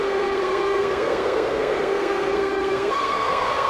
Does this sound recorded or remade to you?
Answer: remade